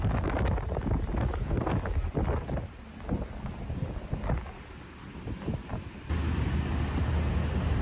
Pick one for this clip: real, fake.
real